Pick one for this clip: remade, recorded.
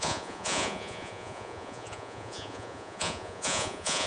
remade